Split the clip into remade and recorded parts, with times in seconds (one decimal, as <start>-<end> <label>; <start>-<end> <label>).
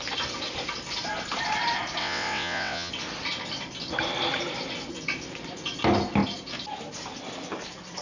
0.0-2.0 recorded; 2.0-2.9 remade; 2.9-8.0 recorded